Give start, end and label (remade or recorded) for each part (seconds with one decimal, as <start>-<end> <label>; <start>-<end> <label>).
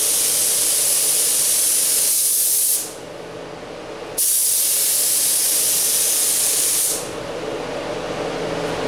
0.0-8.9 recorded